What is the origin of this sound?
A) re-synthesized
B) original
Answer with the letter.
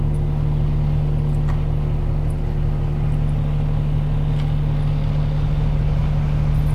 B